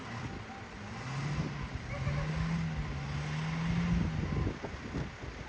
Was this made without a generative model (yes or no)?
yes